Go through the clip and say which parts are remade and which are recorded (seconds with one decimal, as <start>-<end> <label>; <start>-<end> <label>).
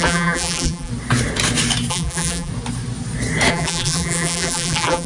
0.0-0.9 remade; 0.9-1.9 recorded; 1.9-2.5 remade; 2.5-3.5 recorded; 3.5-5.1 remade